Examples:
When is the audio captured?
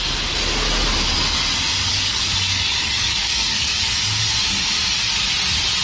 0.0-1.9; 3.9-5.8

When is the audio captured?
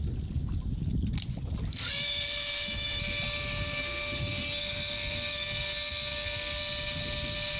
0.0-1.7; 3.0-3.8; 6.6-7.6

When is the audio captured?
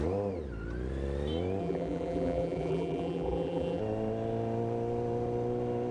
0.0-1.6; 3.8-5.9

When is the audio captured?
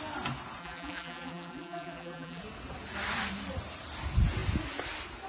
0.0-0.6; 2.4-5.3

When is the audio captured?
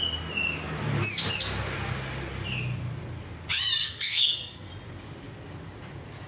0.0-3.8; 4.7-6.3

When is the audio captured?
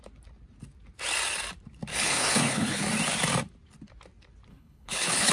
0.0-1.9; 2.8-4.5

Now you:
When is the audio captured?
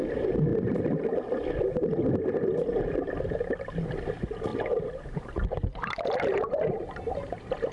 0.0-4.5; 6.9-7.7